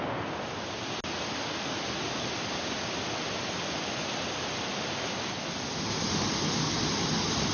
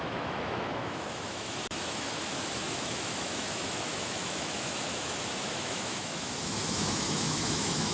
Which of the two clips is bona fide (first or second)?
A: first